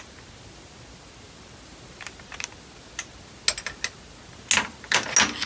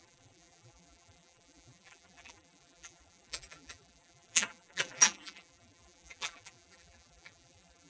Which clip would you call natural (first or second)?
first